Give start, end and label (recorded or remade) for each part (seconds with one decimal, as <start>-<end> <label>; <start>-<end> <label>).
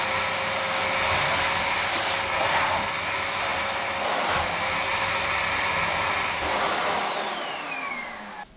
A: 0.0-8.6 recorded